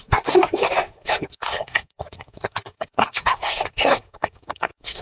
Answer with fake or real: fake